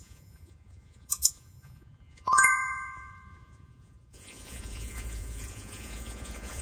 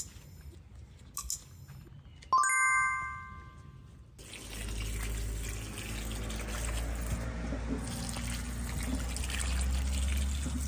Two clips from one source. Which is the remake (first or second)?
first